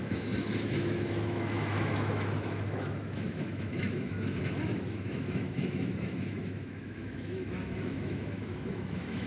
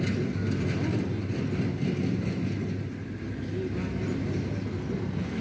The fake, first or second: first